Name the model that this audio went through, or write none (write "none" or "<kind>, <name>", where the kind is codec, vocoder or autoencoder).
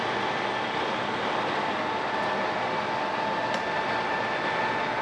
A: none